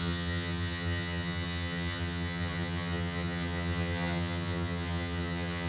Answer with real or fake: fake